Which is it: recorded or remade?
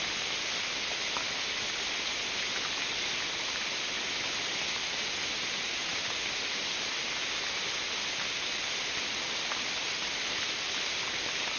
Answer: recorded